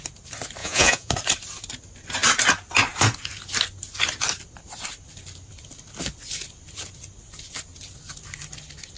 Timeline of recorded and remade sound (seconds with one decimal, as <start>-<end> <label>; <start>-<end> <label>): 0.0-0.6 recorded; 0.6-1.1 remade; 1.1-9.0 recorded